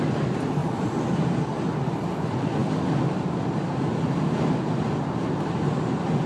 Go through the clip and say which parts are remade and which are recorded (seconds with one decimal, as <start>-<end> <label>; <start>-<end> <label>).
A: 0.0-0.6 recorded; 0.6-1.4 remade; 1.4-6.3 recorded